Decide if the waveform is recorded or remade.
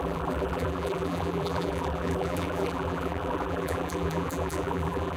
remade